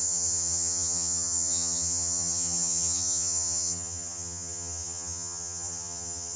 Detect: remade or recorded remade